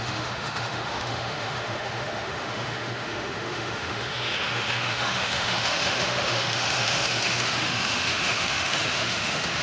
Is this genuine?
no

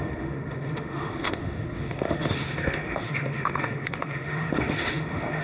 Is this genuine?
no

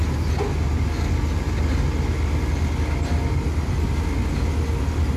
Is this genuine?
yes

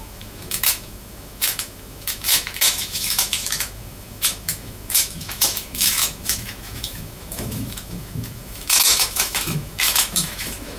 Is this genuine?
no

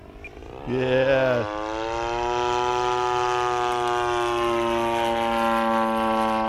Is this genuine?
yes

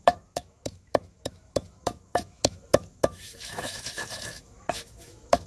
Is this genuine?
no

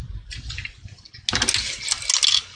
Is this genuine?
yes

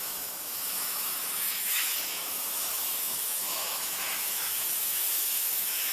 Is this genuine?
no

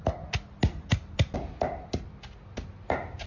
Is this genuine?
yes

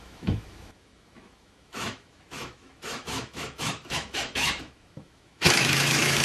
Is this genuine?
no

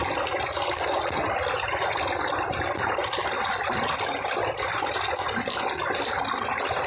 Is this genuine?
yes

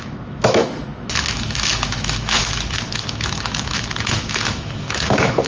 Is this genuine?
no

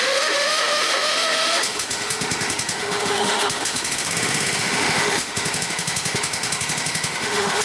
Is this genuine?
no